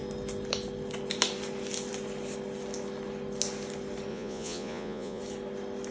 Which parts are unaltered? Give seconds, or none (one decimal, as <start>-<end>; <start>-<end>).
0.0-4.1; 5.2-5.9